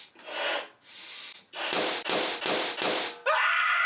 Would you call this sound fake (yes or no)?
no